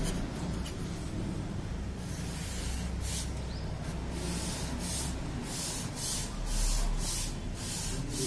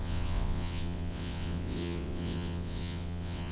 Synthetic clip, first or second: second